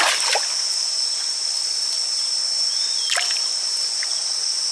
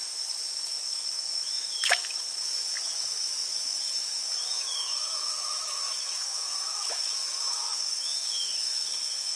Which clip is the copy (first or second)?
second